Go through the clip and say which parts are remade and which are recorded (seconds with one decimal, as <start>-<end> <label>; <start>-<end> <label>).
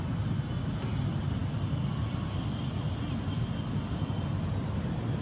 0.0-5.2 recorded